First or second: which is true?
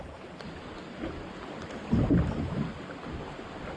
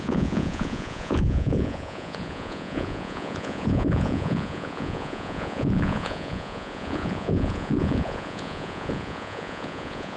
first